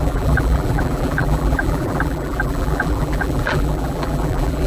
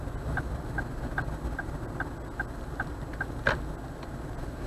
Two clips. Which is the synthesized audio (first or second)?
first